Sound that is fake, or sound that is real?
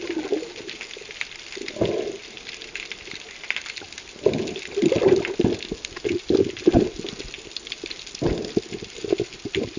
real